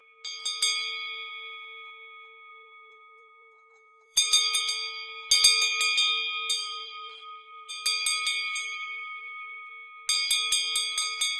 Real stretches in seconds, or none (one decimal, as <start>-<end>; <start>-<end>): 0.0-2.5; 4.6-6.6; 7.7-8.5; 9.7-11.4